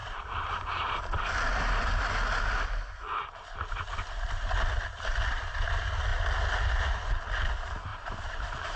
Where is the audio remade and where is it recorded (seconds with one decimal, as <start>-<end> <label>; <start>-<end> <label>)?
0.0-0.6 remade; 0.6-7.9 recorded; 7.9-8.8 remade

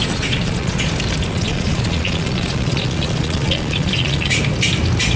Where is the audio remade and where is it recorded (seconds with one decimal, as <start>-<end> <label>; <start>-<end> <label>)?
0.0-0.9 remade; 0.9-1.3 recorded; 1.3-4.4 remade; 4.4-5.2 recorded

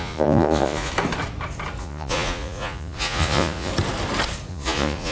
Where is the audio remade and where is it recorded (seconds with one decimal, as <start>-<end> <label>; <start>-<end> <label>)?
0.0-0.9 remade; 0.9-1.8 recorded; 1.8-3.7 remade; 3.7-4.5 recorded; 4.5-5.1 remade

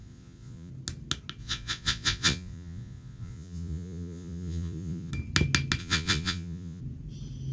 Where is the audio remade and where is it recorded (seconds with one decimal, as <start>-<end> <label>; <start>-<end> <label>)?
0.0-0.7 remade; 0.7-1.4 recorded; 1.4-5.1 remade; 5.1-5.8 recorded; 5.8-6.8 remade; 6.8-7.5 recorded